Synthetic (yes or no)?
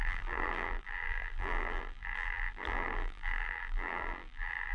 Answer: yes